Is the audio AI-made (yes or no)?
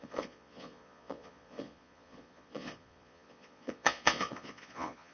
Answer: yes